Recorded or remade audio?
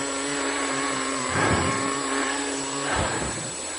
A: recorded